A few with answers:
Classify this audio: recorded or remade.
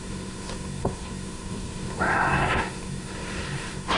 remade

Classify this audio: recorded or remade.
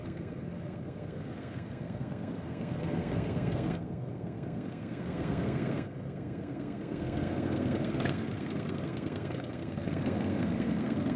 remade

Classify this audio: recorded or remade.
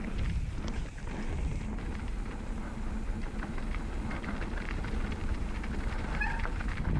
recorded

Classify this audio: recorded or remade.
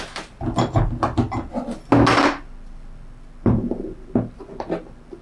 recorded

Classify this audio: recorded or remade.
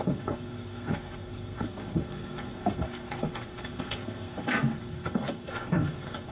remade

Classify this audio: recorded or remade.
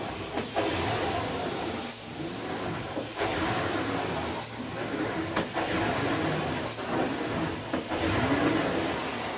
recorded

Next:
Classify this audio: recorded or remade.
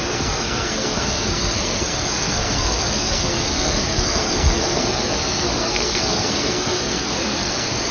remade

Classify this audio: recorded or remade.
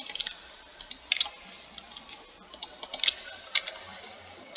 recorded